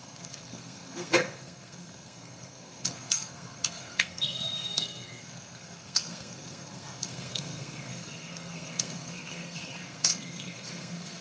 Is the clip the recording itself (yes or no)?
no